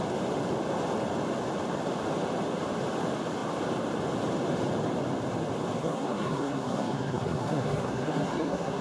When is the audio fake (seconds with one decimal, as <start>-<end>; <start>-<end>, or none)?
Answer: 5.8-8.8